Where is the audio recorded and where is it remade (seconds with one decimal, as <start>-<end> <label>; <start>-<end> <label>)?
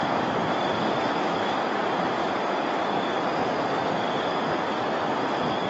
0.0-0.4 recorded; 0.4-1.6 remade; 1.6-3.4 recorded; 3.4-4.3 remade; 4.3-5.7 recorded